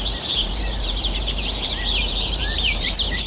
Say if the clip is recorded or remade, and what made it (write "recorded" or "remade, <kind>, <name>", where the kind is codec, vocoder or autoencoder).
remade, vocoder, BigVGAN v2